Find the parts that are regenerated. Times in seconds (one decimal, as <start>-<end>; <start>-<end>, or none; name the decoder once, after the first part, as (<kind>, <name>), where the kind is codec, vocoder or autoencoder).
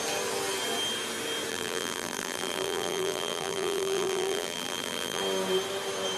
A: 1.5-5.2 (vocoder, BigVGAN v2)